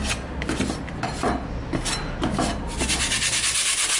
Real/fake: real